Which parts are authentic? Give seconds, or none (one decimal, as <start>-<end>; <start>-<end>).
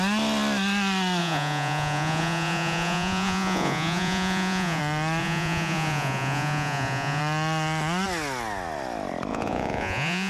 0.0-1.2; 4.8-5.2; 7.2-9.3